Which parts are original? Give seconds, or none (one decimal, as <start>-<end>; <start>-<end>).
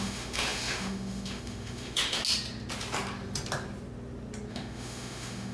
2.2-4.5